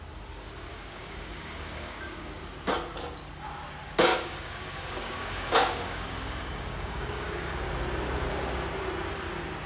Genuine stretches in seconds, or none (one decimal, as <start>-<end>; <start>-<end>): 0.0-0.7; 2.4-4.1; 7.7-9.7